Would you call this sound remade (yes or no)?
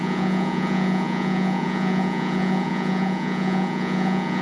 yes